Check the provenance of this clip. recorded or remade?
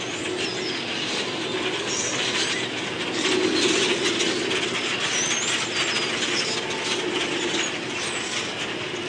recorded